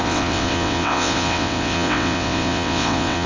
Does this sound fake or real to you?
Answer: fake